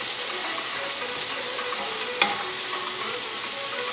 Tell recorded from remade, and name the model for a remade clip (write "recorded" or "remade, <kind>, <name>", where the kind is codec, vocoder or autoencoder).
recorded